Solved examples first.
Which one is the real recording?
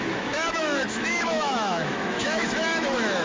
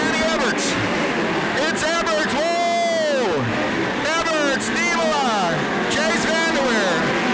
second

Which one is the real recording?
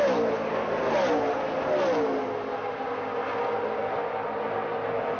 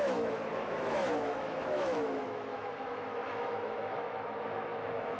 first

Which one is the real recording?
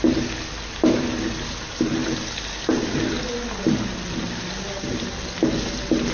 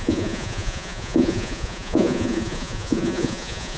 first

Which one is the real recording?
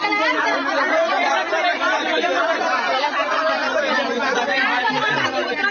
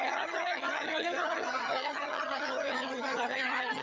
first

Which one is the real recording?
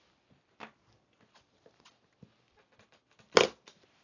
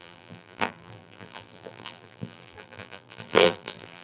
first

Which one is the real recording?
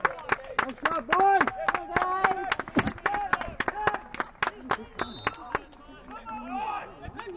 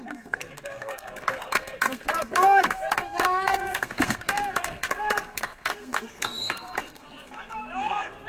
first